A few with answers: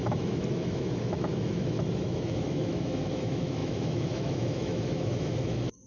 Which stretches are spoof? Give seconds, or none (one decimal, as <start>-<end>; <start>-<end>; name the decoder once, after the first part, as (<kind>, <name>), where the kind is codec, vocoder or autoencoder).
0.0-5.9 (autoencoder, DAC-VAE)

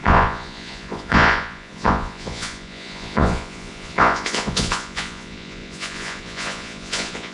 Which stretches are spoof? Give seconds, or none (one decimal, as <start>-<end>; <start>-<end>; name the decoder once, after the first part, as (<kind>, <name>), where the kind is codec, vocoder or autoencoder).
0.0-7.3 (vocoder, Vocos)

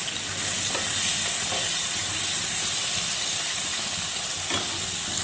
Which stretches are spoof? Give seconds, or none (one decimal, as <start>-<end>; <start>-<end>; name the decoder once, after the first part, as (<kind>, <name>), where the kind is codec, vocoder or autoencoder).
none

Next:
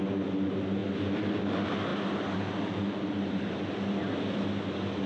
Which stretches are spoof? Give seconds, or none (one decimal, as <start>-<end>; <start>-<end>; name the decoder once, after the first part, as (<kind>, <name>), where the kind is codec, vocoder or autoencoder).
none